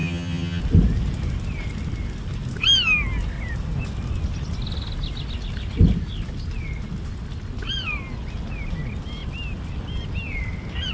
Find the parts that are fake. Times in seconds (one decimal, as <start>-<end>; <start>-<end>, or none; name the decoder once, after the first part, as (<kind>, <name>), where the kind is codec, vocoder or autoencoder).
0.0-0.6 (vocoder, HiFi-GAN)